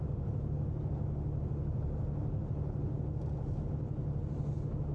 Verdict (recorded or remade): recorded